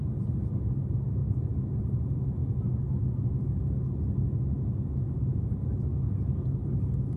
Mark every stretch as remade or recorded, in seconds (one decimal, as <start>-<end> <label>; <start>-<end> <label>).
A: 0.0-1.2 recorded; 1.2-1.8 remade; 1.8-6.6 recorded; 6.6-7.2 remade